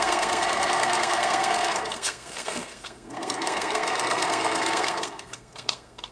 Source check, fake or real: fake